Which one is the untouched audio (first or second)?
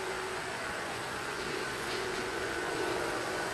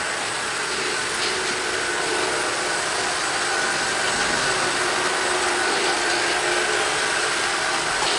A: second